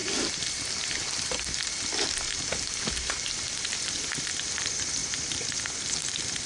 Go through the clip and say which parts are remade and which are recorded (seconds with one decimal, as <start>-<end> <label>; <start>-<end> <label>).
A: 0.0-6.5 recorded